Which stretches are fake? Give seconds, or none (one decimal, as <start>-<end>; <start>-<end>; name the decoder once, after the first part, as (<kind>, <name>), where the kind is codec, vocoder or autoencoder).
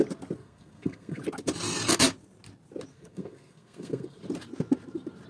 0.4-1.2 (codec, SNAC); 2.9-4.2